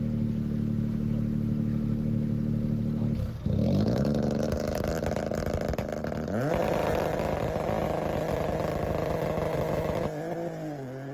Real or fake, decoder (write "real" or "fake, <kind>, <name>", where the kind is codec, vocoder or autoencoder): real